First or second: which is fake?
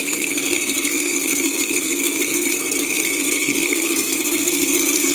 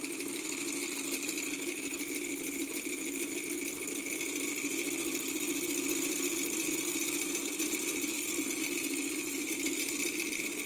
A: first